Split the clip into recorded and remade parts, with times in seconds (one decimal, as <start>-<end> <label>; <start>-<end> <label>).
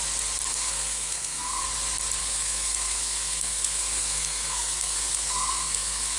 0.0-0.5 recorded; 0.5-1.6 remade; 1.6-2.2 recorded; 2.2-6.2 remade